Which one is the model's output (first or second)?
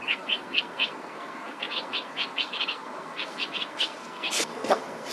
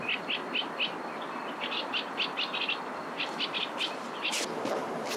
first